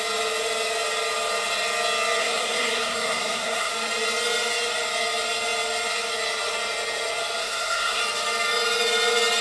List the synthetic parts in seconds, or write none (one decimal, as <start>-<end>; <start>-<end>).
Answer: 2.2-3.7; 7.4-8.0